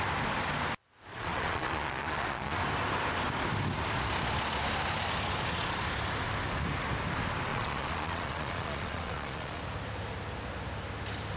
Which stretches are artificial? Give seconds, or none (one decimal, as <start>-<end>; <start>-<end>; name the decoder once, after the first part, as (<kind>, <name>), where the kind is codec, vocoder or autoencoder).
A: 1.1-2.6 (vocoder, Vocos); 7.5-9.6